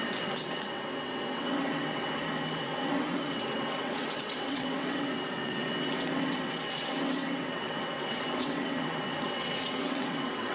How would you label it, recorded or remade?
remade